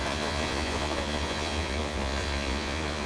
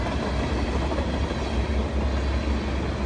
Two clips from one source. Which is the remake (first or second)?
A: first